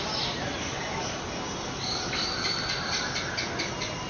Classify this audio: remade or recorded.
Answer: recorded